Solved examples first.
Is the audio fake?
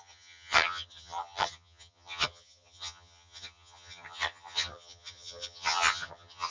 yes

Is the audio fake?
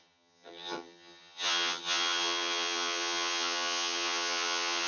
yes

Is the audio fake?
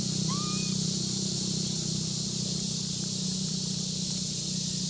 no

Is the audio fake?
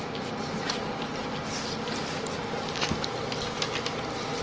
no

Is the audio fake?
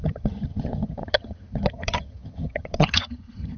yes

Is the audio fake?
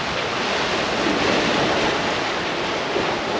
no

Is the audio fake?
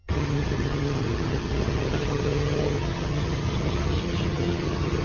yes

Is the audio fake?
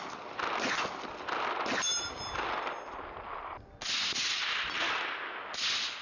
no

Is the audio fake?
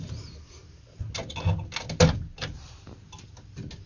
no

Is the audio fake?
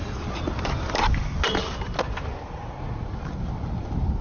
no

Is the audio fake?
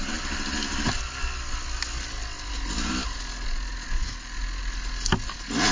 no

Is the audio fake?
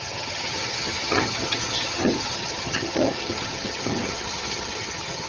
yes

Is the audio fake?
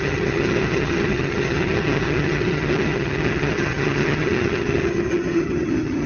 yes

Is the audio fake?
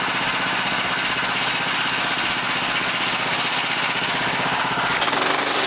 no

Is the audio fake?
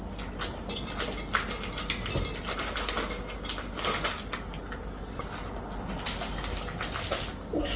no